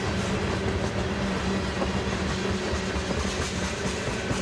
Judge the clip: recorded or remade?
recorded